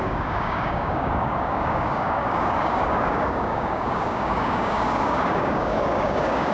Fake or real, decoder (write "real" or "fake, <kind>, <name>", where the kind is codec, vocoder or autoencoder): fake, codec, DAC